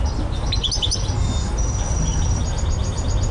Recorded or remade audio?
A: recorded